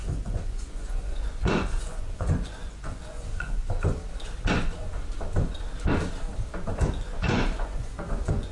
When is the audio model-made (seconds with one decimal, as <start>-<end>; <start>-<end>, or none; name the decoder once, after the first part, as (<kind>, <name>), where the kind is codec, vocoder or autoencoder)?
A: 0.0-3.6 (vocoder, Vocos); 6.8-8.5